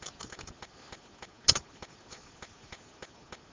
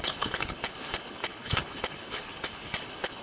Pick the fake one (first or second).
second